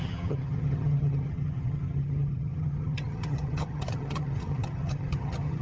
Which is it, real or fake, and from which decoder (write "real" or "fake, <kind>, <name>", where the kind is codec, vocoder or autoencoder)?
fake, vocoder, HiFi-GAN